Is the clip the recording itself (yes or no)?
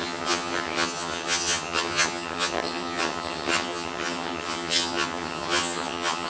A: no